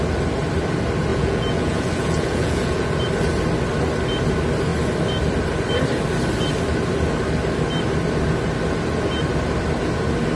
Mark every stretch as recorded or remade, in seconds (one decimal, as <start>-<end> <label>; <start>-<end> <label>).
0.0-1.1 recorded; 1.1-3.0 remade; 3.0-10.4 recorded